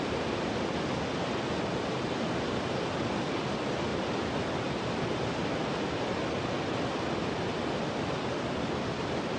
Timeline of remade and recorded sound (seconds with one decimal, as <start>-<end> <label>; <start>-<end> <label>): 0.0-9.4 recorded